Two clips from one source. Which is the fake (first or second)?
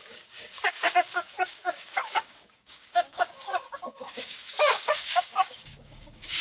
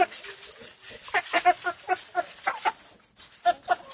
first